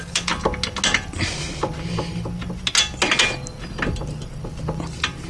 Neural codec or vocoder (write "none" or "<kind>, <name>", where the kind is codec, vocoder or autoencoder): none